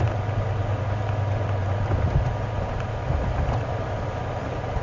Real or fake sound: fake